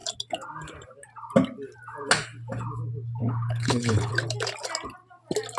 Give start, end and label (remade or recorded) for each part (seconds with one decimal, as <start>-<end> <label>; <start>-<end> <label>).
0.0-3.2 recorded; 3.2-4.1 remade; 4.1-5.6 recorded